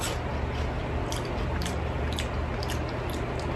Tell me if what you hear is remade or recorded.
recorded